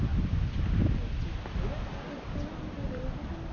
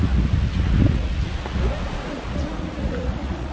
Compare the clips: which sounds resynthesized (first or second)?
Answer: second